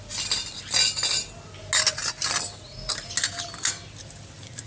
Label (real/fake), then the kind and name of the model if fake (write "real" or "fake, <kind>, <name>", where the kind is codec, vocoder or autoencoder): real